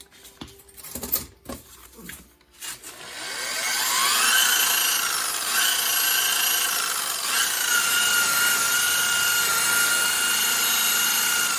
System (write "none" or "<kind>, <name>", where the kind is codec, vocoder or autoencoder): none